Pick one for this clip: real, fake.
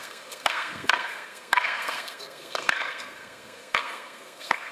fake